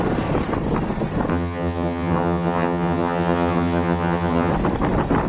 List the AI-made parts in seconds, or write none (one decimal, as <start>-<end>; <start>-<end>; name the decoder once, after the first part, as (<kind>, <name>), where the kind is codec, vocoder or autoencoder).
1.3-4.5 (vocoder, HiFi-GAN)